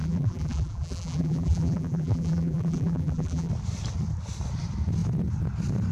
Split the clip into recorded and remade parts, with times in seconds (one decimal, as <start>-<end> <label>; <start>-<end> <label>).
0.0-3.5 remade; 3.5-5.9 recorded

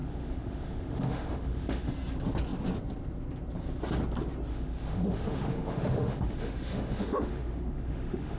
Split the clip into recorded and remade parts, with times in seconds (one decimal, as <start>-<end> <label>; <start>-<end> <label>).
0.0-1.9 remade; 1.9-4.5 recorded; 4.5-8.4 remade

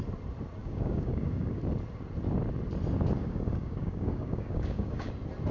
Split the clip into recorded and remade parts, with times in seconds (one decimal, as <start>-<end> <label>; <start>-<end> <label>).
0.0-0.6 recorded; 0.6-1.6 remade; 1.6-3.2 recorded; 3.2-5.1 remade; 5.1-5.5 recorded

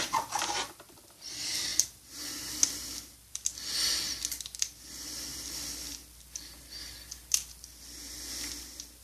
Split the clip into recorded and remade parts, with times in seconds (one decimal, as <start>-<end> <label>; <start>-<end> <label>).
0.0-1.7 remade; 1.7-3.3 recorded; 3.3-9.0 remade

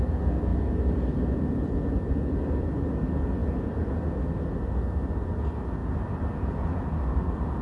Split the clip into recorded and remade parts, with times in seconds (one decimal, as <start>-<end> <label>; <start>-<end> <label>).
0.0-7.6 recorded

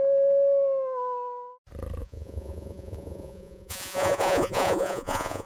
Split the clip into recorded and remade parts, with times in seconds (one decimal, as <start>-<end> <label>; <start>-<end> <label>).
0.0-2.0 recorded; 2.0-5.5 remade

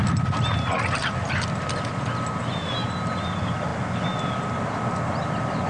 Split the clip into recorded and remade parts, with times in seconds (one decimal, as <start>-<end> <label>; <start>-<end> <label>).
0.0-5.7 recorded

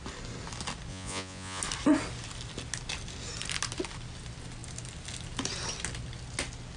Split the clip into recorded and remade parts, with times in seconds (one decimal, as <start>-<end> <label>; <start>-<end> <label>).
0.0-0.9 recorded; 0.9-1.6 remade; 1.6-6.8 recorded